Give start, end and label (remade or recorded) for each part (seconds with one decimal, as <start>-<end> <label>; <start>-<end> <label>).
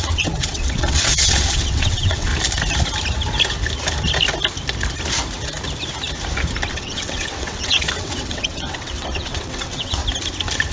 0.0-2.3 remade; 2.3-6.7 recorded; 6.7-10.0 remade; 10.0-10.7 recorded